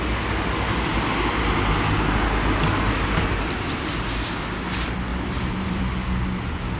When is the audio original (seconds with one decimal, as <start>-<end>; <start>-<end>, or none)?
0.0-5.1; 5.8-6.8